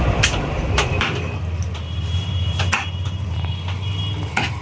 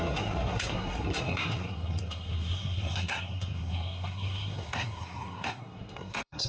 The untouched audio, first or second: first